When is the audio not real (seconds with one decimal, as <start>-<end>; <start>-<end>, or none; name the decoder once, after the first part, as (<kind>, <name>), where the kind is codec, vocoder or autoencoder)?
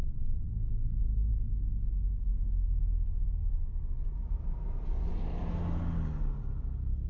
0.0-0.5 (vocoder, WaveNeXt)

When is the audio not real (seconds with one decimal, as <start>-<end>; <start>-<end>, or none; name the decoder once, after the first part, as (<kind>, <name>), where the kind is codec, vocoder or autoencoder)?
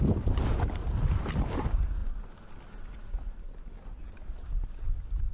none